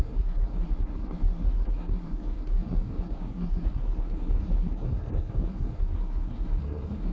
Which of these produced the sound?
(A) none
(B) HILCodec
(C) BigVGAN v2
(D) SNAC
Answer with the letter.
D